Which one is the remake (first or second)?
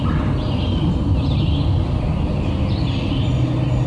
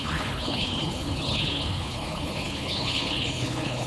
second